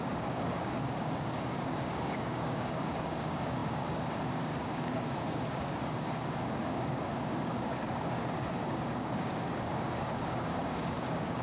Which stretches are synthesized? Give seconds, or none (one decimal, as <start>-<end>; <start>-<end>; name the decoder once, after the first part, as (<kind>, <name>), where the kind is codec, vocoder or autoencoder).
0.0-11.4 (codec, DAC)